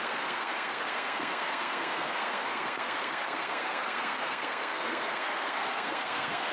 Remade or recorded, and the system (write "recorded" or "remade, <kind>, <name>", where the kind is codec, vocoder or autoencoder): remade, codec, SNAC